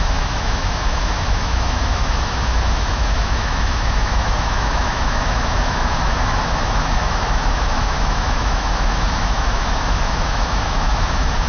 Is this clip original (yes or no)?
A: no